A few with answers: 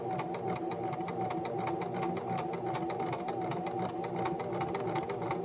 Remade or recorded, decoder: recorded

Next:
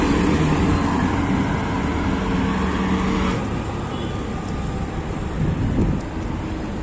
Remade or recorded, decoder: recorded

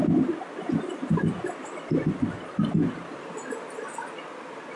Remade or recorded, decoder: recorded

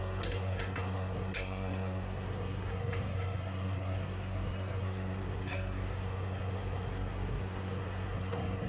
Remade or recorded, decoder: remade, codec, SNAC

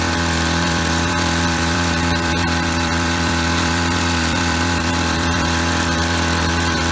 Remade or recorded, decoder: remade, vocoder, BigVGAN v2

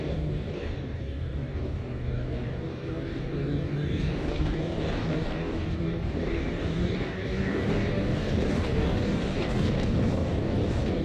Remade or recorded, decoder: remade, codec, DAC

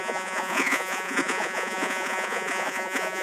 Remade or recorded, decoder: remade, vocoder, Vocos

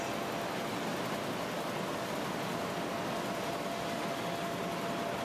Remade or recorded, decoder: recorded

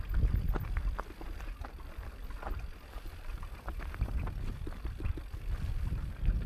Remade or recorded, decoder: recorded